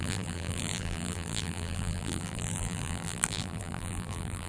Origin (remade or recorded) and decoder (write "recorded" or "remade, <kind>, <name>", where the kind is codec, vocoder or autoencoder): remade, vocoder, BigVGAN v2